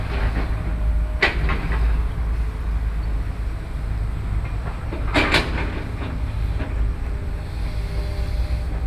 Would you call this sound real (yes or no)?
yes